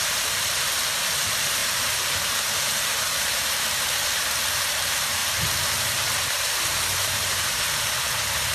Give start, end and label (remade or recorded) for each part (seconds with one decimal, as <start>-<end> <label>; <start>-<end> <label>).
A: 0.0-5.2 remade; 5.2-6.2 recorded; 6.2-8.5 remade